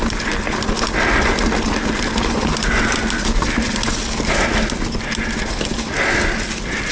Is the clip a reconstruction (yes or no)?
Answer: no